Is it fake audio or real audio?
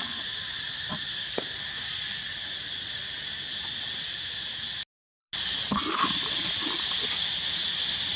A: real